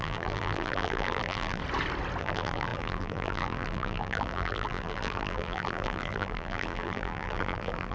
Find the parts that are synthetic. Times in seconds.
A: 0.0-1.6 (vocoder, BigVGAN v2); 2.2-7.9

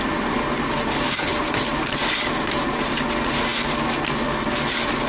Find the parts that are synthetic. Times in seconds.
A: 1.3-2.9 (vocoder, BigVGAN v2)

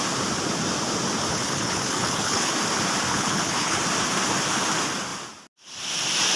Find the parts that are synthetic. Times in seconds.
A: 1.3-2.5 (codec, HILCodec); 3.1-3.8

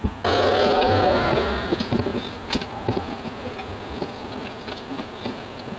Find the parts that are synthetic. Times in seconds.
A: none

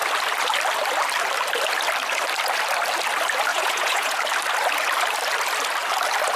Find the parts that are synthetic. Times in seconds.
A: 3.5-4.2 (vocoder, Vocos)

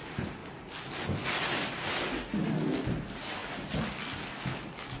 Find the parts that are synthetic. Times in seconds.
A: none